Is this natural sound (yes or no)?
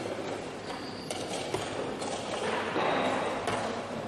yes